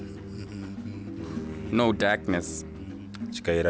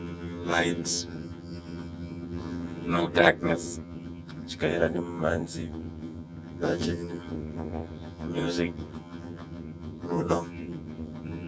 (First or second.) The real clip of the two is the first